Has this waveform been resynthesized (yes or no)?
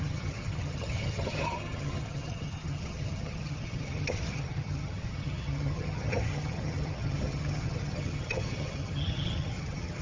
yes